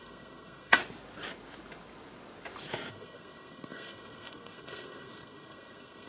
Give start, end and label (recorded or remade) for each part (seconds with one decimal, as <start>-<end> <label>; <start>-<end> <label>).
0.0-0.8 remade; 0.8-2.9 recorded; 2.9-6.1 remade